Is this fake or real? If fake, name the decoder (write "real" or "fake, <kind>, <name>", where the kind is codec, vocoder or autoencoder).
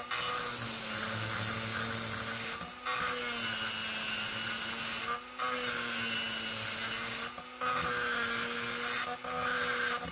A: real